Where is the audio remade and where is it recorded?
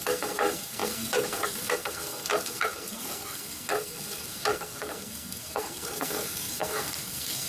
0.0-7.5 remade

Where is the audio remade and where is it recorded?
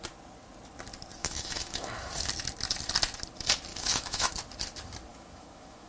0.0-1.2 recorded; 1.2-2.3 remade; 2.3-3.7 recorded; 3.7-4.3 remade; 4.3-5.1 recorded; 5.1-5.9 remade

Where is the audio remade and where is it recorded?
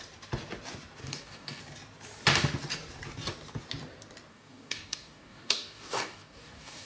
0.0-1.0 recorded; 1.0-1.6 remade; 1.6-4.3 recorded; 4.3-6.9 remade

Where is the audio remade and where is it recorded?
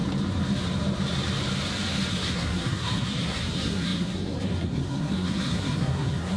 0.0-2.1 recorded; 2.1-6.4 remade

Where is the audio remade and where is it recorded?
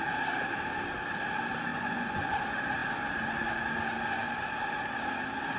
0.0-1.7 recorded; 1.7-2.3 remade; 2.3-5.6 recorded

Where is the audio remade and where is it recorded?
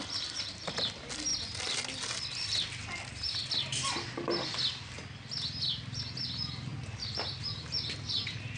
0.0-8.6 recorded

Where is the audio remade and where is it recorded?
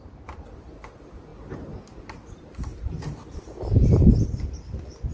0.0-5.1 recorded